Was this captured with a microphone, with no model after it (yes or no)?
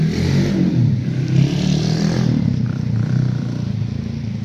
yes